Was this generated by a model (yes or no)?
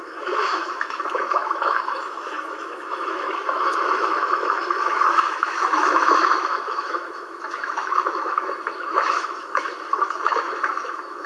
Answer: yes